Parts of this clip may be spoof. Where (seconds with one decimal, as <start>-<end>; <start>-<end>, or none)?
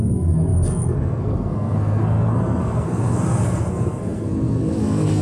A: 0.0-5.2